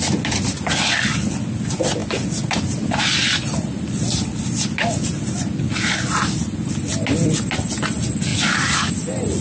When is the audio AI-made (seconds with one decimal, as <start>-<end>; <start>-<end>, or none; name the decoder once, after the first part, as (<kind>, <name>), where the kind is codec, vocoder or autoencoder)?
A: none